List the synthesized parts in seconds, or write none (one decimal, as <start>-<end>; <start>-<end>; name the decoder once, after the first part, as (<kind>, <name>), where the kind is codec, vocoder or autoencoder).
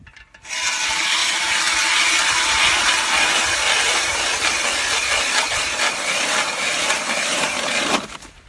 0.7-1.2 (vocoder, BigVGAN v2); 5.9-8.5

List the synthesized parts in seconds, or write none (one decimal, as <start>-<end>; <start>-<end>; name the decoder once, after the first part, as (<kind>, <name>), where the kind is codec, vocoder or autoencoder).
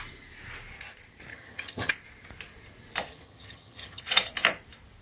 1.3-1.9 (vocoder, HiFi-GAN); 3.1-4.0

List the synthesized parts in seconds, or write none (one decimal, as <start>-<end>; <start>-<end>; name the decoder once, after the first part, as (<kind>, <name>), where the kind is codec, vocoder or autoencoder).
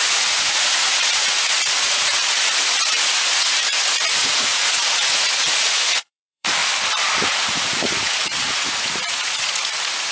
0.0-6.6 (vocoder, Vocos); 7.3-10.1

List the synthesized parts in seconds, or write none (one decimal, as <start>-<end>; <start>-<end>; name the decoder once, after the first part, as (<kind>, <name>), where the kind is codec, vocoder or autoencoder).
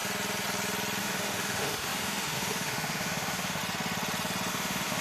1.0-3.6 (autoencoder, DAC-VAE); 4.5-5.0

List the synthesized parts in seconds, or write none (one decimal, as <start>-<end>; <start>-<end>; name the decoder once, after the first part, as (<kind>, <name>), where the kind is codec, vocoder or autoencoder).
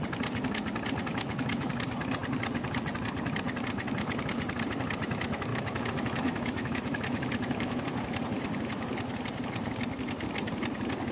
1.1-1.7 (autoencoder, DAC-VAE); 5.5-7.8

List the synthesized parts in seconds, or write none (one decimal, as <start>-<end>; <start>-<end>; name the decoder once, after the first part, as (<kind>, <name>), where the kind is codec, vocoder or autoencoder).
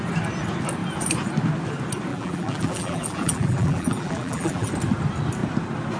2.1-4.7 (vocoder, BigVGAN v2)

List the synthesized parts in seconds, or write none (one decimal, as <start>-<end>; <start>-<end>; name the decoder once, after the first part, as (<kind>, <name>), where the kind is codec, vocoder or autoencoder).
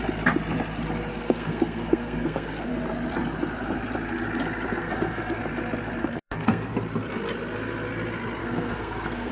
1.1-2.7 (codec, SNAC); 4.8-5.4; 6.0-6.7; 8.4-9.3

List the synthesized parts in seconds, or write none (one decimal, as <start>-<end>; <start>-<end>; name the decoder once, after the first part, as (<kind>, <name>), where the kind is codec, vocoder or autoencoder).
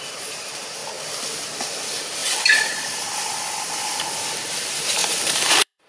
0.0-0.8 (vocoder, BigVGAN v2); 1.6-5.9